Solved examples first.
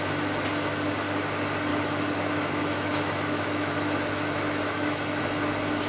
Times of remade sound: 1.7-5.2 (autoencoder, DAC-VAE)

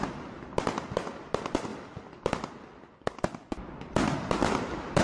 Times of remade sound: none

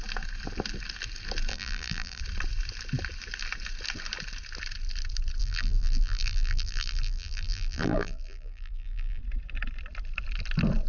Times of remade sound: 1.5-2.2 (vocoder, BigVGAN v2); 5.4-9.2